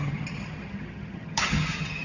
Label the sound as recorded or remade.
remade